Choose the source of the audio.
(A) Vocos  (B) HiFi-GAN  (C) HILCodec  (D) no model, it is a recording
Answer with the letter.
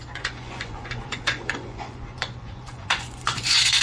A